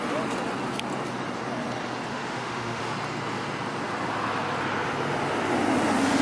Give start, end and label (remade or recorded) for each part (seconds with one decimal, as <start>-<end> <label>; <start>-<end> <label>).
0.0-2.1 recorded; 2.1-2.8 remade; 2.8-6.2 recorded